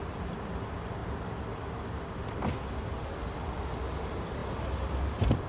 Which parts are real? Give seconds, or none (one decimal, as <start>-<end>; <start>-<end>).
0.0-5.5